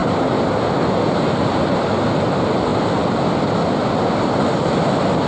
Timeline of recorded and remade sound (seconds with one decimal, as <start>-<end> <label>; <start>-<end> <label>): 0.0-5.3 recorded